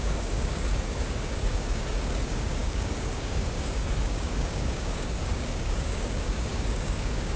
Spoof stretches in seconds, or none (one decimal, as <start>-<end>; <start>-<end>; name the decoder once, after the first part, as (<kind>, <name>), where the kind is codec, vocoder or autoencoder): 0.0-7.4 (codec, DAC)